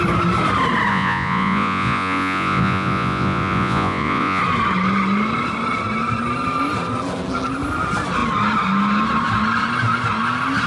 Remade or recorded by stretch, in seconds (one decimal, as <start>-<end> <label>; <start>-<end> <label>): 0.0-0.9 recorded; 0.9-4.4 remade; 4.4-10.7 recorded